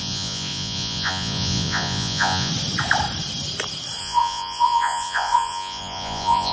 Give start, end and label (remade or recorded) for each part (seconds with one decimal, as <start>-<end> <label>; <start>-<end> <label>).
0.0-2.5 remade; 2.5-4.0 recorded; 4.0-6.5 remade